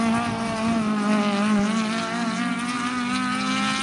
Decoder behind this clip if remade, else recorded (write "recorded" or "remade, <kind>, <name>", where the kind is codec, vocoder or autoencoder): recorded